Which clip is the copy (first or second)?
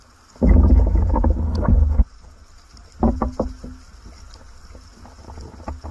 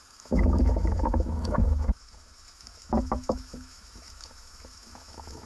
second